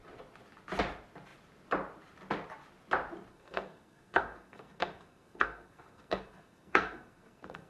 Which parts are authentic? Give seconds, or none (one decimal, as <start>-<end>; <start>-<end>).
0.0-3.3